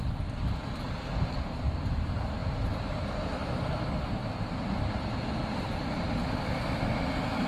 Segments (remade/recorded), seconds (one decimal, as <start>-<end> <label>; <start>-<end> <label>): 0.0-7.5 recorded